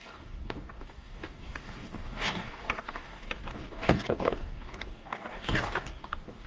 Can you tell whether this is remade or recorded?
remade